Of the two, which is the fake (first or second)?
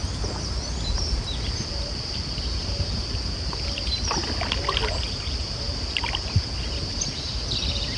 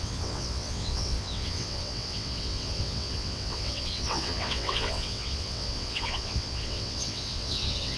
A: second